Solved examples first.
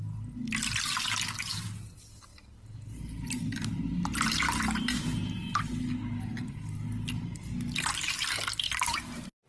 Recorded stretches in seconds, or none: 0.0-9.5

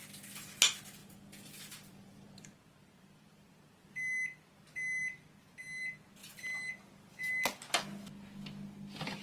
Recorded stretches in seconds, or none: 0.0-1.0; 3.7-6.2; 7.3-9.2

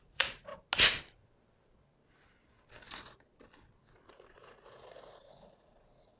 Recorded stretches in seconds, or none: 0.5-4.1

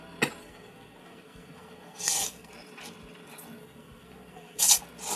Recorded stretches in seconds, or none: 0.0-0.4; 2.5-3.6; 4.8-5.2

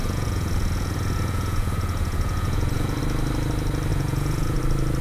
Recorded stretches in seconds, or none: 3.0-3.9; 4.6-5.0

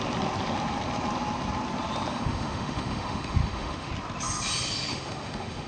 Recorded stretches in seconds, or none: 0.0-2.1; 3.9-4.9

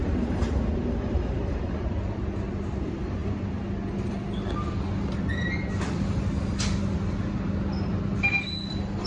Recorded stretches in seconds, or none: 1.9-9.1